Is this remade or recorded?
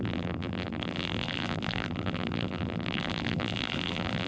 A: remade